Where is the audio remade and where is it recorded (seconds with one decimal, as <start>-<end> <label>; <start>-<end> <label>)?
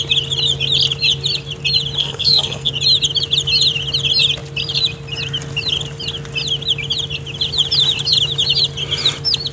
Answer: 0.0-2.0 recorded; 2.0-2.7 remade; 2.7-9.5 recorded